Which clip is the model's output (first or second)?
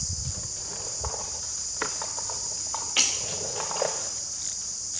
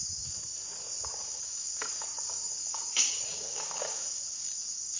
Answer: second